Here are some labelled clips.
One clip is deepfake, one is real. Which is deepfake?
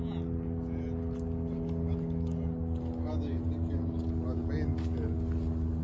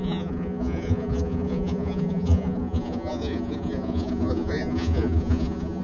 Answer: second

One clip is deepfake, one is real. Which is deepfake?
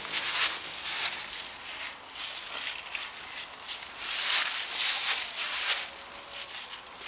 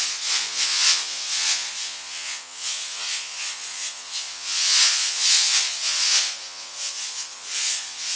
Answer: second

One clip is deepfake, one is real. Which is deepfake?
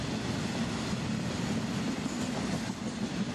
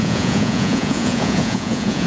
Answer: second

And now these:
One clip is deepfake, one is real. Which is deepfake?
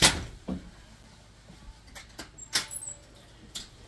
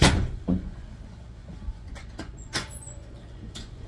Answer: second